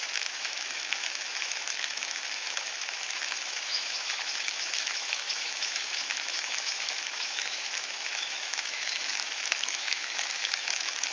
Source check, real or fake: fake